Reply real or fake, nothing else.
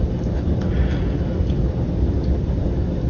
real